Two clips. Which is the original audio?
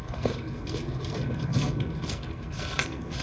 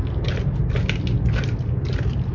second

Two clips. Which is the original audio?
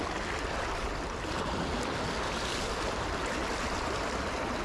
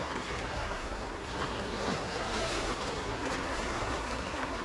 first